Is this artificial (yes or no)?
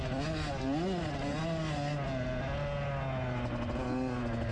no